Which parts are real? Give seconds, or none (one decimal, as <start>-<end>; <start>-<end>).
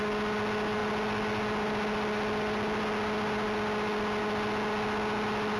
0.0-5.6